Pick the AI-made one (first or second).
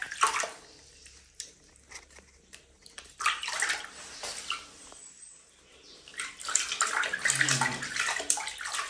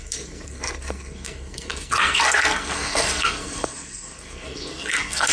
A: second